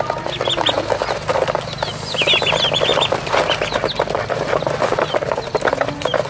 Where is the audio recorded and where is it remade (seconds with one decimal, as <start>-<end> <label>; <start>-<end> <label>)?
0.0-6.3 recorded